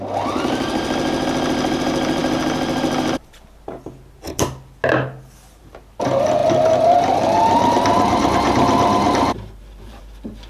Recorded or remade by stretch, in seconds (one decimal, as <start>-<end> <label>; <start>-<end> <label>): 0.0-6.4 recorded; 6.4-10.0 remade; 10.0-10.5 recorded